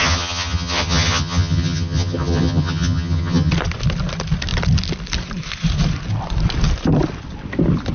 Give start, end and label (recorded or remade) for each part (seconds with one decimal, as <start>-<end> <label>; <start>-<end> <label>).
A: 0.0-3.5 remade; 3.5-7.9 recorded